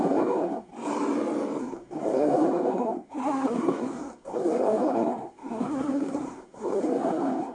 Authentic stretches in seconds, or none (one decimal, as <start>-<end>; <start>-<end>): 0.7-1.6